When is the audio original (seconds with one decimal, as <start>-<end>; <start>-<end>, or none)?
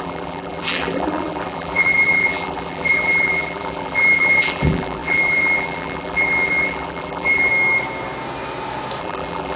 7.5-9.0